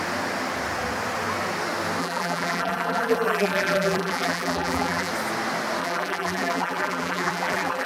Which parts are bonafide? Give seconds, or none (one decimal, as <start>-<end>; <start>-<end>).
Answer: 0.0-2.0; 5.1-5.8